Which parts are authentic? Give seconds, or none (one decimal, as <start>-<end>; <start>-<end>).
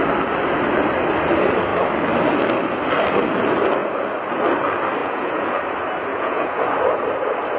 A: 0.0-5.0; 5.6-6.1; 6.6-7.6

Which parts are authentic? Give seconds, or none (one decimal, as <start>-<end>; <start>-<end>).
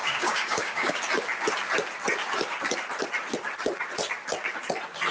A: 1.0-5.1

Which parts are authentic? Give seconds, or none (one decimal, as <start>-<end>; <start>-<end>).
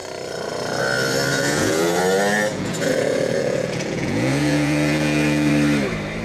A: 0.0-1.3; 2.0-2.5; 5.5-6.2